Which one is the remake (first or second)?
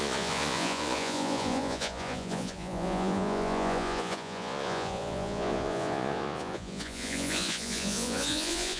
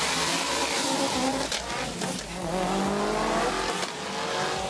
first